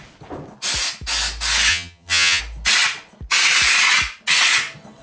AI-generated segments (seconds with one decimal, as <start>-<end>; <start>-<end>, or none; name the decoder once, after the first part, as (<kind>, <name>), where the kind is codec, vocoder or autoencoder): 1.7-2.4 (vocoder, HiFi-GAN)